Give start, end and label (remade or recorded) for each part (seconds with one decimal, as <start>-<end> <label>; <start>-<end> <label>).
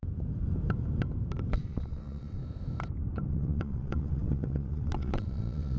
0.0-1.5 recorded; 1.5-2.4 remade; 2.4-3.3 recorded; 3.3-5.8 remade